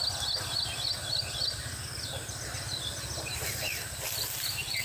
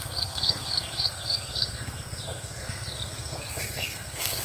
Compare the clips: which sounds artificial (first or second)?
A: second